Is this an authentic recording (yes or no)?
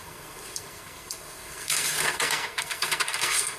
no